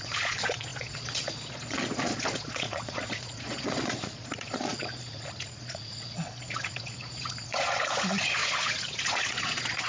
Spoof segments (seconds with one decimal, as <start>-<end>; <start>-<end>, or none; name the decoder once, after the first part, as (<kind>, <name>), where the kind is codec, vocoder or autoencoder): 0.0-9.9 (vocoder, Vocos)